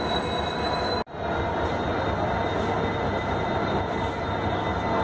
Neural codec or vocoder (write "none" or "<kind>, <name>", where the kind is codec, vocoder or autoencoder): none